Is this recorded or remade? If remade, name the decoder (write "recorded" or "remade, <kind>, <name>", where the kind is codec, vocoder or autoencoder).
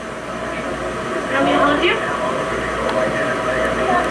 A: recorded